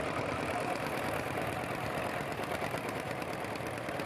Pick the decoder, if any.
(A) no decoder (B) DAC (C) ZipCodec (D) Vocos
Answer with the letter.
A